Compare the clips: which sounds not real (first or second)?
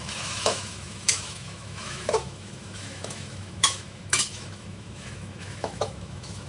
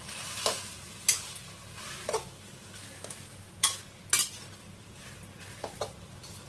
first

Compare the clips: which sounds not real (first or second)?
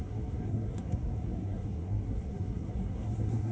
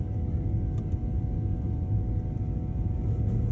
first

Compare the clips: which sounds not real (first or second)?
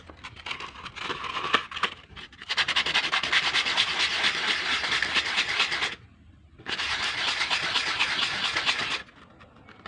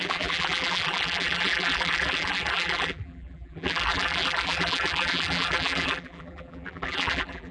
second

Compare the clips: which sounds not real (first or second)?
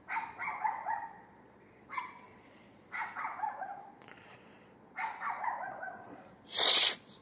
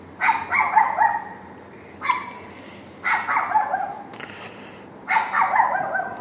first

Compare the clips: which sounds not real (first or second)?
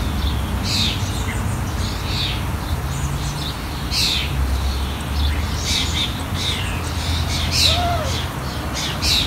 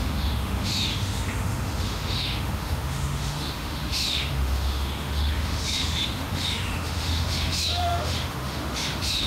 second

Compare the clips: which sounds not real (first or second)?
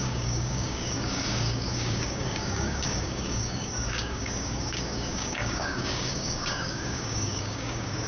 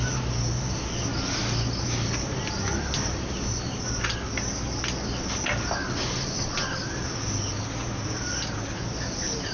first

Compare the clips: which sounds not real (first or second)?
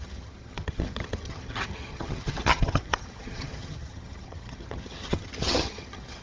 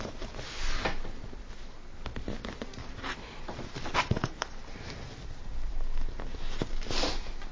first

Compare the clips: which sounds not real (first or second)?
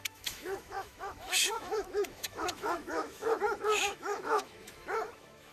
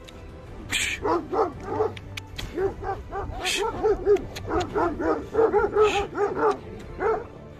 first